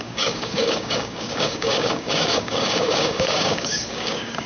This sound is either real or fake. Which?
fake